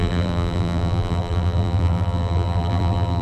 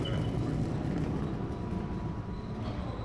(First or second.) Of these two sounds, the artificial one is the first